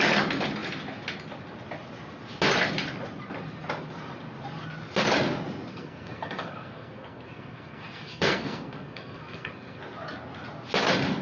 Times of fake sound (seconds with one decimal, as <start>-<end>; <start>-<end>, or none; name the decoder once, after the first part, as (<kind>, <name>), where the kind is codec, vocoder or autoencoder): 5.7-9.8 (codec, SNAC)